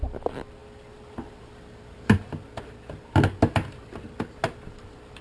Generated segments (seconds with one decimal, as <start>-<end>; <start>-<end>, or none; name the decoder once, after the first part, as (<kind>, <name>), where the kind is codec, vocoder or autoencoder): none